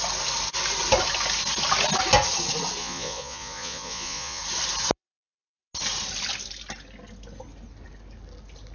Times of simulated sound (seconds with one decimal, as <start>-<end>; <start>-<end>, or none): 2.8-4.4